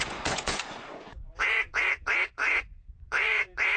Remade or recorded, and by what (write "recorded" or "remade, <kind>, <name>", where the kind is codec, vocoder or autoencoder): remade, vocoder, Vocos